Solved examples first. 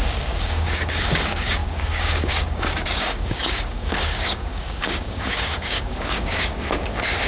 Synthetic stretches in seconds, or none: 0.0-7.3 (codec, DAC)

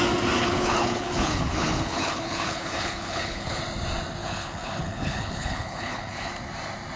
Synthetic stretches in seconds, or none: 0.4-3.6 (codec, HILCodec); 4.2-6.3

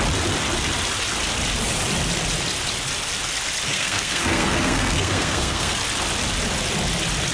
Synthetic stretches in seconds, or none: 3.7-5.8 (codec, SNAC)

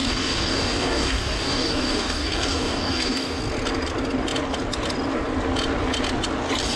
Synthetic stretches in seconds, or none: 0.0-3.4 (codec, DAC)

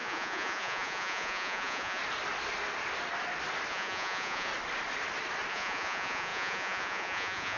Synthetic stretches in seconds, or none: 0.0-2.0 (vocoder, Vocos); 3.7-4.5; 5.5-7.6

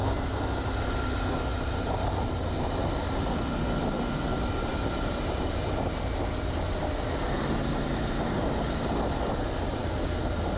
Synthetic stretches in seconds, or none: 1.5-2.7 (vocoder, BigVGAN v2); 4.7-5.8

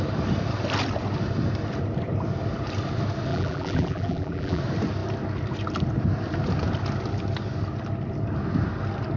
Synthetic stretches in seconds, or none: 3.3-4.6 (vocoder, BigVGAN v2)

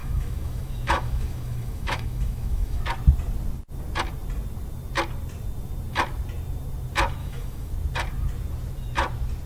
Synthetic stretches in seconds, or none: 0.0-2.8 (autoencoder, DAC-VAE); 7.2-7.7